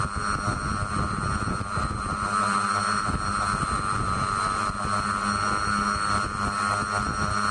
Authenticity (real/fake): real